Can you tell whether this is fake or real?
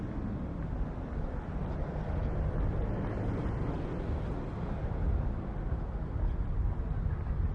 real